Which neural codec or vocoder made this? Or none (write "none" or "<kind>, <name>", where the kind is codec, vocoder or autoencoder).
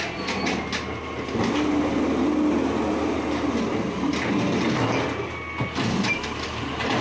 none